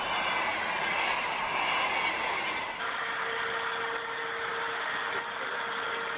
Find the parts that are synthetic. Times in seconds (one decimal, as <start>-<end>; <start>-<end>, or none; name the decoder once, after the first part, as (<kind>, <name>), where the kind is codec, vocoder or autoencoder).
none